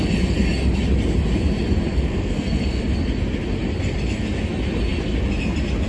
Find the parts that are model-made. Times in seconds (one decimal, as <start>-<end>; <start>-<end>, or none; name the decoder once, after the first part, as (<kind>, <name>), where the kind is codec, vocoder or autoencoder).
2.1-2.8 (codec, SNAC)